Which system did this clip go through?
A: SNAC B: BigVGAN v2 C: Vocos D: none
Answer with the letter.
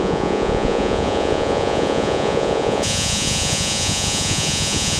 C